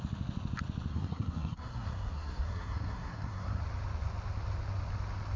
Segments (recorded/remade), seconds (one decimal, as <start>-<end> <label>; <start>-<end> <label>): 0.0-0.9 recorded; 0.9-3.6 remade; 3.6-5.4 recorded